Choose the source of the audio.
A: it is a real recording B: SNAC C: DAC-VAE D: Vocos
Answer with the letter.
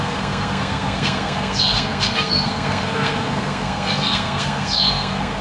B